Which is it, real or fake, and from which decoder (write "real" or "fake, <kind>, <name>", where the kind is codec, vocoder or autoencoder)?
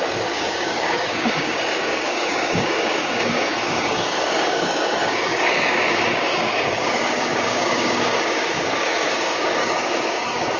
fake, codec, DAC